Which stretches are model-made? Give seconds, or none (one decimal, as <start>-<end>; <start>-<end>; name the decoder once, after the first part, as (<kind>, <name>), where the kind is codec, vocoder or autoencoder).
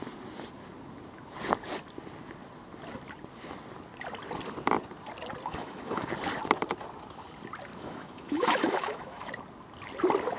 5.5-6.1 (autoencoder, DAC-VAE); 7.7-9.3